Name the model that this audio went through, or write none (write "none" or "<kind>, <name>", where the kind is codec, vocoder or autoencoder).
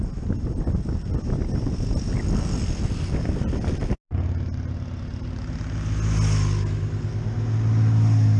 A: none